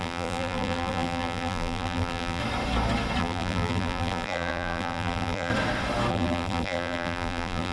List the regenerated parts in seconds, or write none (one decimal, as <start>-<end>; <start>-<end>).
0.0-2.4; 3.2-5.5; 6.1-7.7